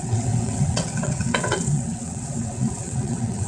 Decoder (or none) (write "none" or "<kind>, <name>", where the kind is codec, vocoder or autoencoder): vocoder, WaveNeXt